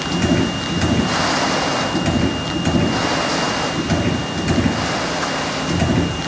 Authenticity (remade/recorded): recorded